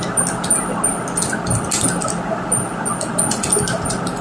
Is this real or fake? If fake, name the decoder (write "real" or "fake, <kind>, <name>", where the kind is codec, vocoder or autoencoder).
real